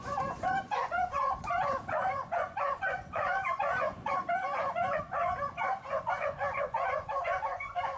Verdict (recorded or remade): remade